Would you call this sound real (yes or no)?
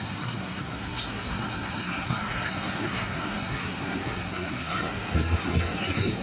no